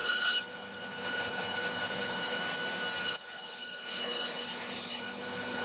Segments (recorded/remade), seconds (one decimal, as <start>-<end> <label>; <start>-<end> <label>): 0.0-2.4 remade; 2.4-3.0 recorded; 3.0-5.6 remade